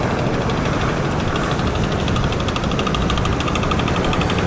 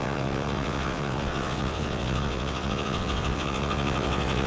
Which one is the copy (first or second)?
second